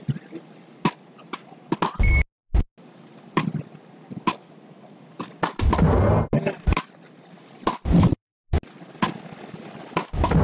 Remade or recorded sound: recorded